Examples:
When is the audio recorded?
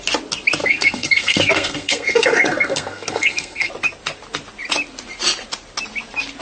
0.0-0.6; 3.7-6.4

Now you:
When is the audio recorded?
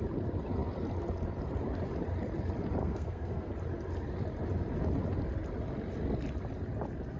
0.0-2.8; 3.5-7.2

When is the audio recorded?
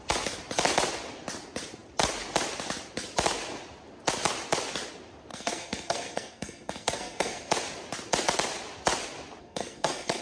0.0-5.3; 7.5-9.4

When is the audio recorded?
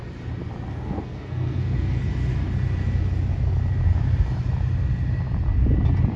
0.0-0.7; 2.0-6.2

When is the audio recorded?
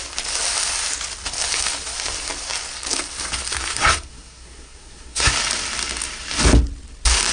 0.0-3.7; 5.3-7.3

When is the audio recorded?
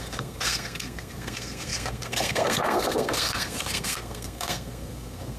none